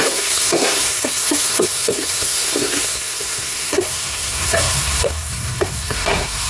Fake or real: fake